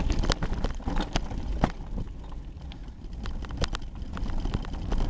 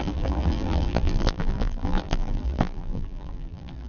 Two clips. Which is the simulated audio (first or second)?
second